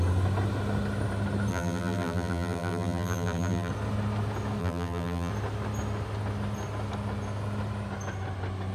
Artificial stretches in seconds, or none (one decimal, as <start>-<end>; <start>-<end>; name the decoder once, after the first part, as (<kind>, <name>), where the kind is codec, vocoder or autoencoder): 1.5-3.7 (vocoder, BigVGAN v2); 4.6-5.3